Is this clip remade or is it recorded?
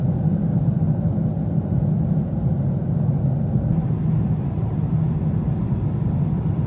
recorded